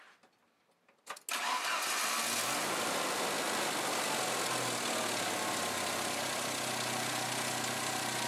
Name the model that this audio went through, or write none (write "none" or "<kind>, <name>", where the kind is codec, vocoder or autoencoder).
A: none